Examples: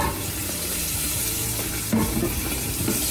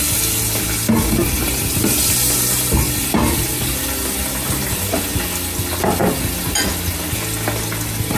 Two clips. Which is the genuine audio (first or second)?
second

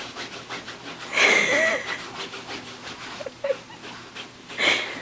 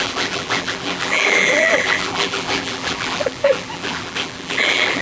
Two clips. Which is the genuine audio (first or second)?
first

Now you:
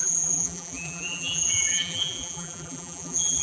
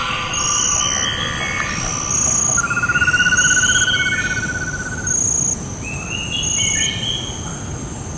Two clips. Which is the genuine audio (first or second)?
second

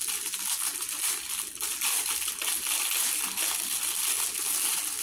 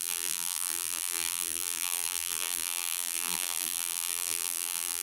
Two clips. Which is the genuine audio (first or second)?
first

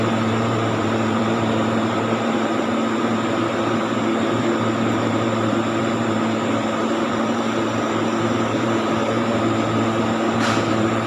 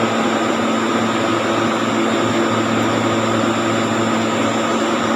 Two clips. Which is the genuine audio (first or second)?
second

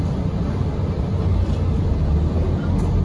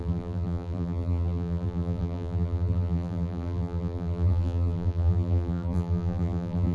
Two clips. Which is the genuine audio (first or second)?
first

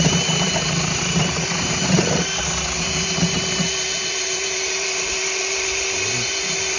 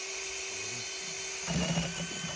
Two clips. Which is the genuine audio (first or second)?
second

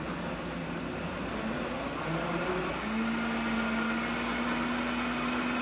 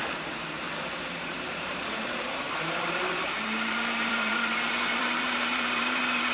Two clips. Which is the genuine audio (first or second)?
first